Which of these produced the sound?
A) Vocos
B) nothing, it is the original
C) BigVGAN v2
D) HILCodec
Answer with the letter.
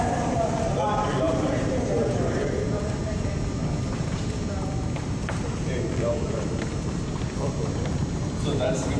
C